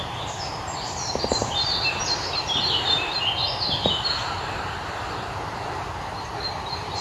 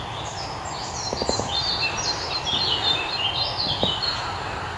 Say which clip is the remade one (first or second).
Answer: first